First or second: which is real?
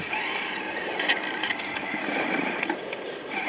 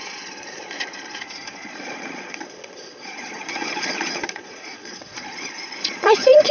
first